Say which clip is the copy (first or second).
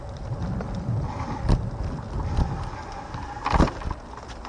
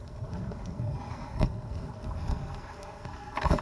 second